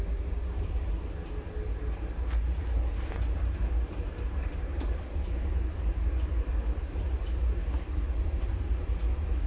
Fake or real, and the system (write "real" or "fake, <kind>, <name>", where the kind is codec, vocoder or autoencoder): real